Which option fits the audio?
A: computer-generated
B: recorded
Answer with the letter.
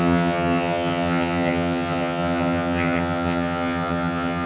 A